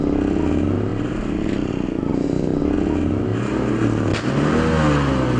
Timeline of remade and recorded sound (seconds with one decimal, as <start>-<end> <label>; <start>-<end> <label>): 0.0-5.4 recorded